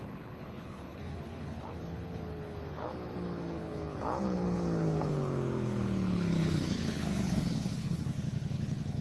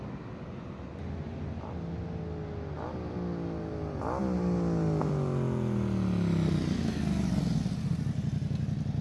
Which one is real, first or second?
second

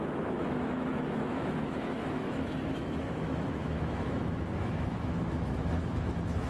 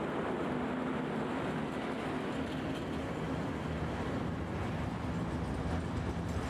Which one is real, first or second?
second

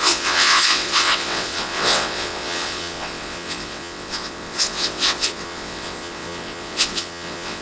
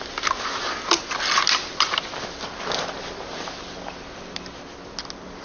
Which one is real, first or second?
second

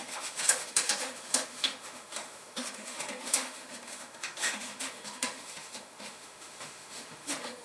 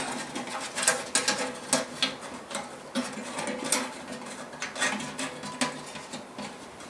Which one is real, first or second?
second